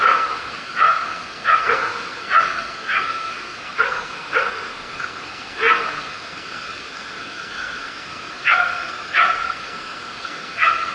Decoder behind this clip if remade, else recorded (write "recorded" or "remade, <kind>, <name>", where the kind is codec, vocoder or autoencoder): remade, codec, SNAC